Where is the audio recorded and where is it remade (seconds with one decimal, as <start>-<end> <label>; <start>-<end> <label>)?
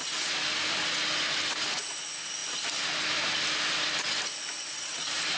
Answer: 0.0-5.4 recorded